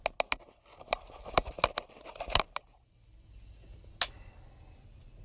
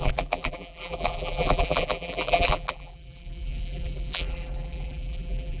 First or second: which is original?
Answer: first